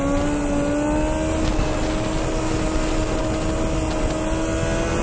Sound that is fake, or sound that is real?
real